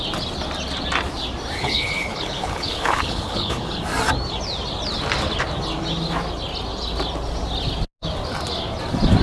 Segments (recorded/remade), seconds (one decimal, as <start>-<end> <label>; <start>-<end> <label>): 0.0-1.6 recorded; 1.6-3.8 remade; 3.8-9.2 recorded